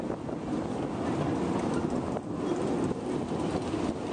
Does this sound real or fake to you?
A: real